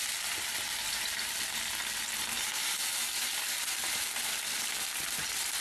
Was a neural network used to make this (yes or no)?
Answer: yes